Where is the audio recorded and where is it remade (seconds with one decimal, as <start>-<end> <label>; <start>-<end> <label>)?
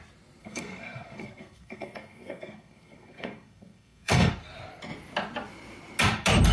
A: 0.0-0.4 recorded; 0.4-4.3 remade; 4.3-6.5 recorded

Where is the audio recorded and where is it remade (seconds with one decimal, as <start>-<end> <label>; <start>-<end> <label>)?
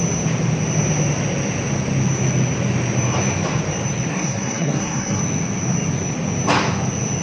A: 0.0-4.1 recorded; 4.1-5.2 remade; 5.2-7.2 recorded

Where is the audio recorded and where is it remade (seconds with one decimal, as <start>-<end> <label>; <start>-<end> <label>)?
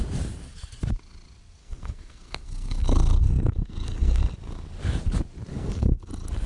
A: 0.0-1.6 recorded; 1.6-4.2 remade; 4.2-5.5 recorded; 5.5-6.1 remade; 6.1-6.5 recorded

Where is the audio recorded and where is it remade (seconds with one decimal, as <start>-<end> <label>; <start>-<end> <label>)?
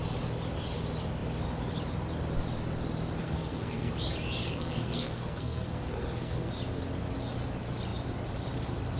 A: 0.0-3.2 recorded; 3.2-3.9 remade; 3.9-4.4 recorded; 4.4-6.5 remade; 6.5-9.0 recorded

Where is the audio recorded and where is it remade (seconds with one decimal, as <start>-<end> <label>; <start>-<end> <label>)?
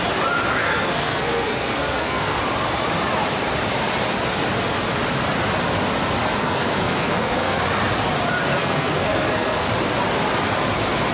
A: 0.0-0.6 recorded; 0.6-2.4 remade; 2.4-6.4 recorded; 6.4-7.6 remade; 7.6-8.6 recorded; 8.6-9.7 remade; 9.7-11.1 recorded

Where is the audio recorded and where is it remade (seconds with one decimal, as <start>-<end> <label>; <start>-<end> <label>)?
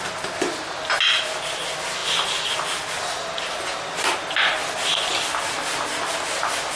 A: 0.0-6.8 recorded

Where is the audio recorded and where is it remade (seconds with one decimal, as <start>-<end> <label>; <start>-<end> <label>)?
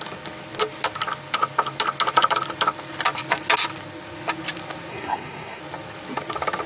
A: 0.0-4.9 recorded; 4.9-5.6 remade; 5.6-6.7 recorded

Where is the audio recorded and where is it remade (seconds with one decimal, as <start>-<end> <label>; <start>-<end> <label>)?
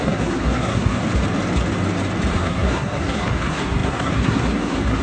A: 0.0-1.0 remade; 1.0-2.3 recorded; 2.3-5.0 remade